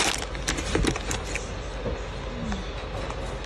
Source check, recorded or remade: recorded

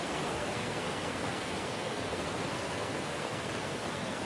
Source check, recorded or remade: remade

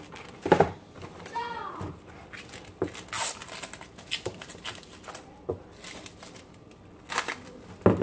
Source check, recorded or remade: recorded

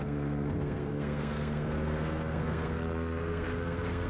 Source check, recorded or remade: remade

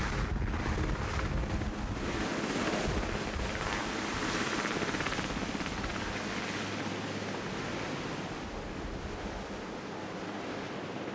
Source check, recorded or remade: recorded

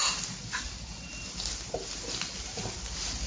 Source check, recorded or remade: recorded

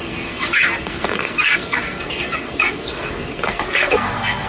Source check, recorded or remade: remade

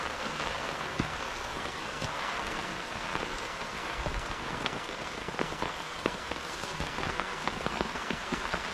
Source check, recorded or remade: remade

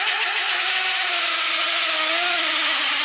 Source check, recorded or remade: recorded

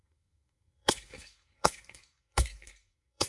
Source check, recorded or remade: remade